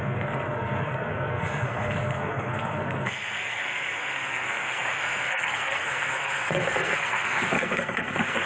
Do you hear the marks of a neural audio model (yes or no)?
yes